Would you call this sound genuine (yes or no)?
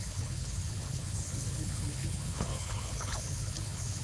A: no